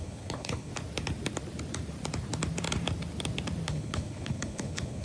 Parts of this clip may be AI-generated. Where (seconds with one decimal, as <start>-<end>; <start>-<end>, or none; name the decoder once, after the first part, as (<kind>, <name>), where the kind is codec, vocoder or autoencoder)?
0.0-0.7 (codec, HILCodec); 3.7-5.0